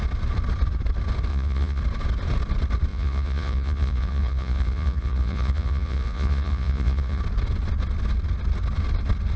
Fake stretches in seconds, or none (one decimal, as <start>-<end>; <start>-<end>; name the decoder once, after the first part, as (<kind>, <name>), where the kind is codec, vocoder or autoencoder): 1.3-1.8 (vocoder, Vocos); 2.9-7.2